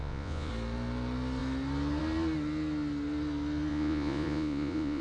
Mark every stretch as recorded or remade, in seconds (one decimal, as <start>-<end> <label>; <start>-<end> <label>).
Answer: 0.0-0.5 remade; 0.5-3.7 recorded; 3.7-5.0 remade